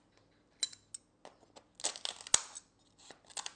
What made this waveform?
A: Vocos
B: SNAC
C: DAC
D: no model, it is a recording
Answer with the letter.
D